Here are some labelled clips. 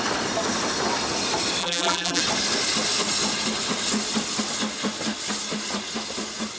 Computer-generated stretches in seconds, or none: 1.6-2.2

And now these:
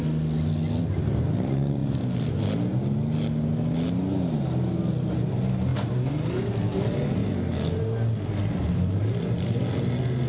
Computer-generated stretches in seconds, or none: 8.4-9.6

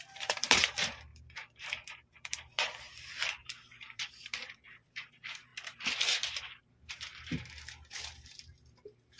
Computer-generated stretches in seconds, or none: 0.0-5.5; 6.6-9.2